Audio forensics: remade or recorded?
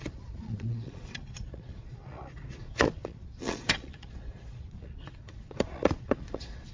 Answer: remade